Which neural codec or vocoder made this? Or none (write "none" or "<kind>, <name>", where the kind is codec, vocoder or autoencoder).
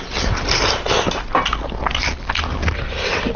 none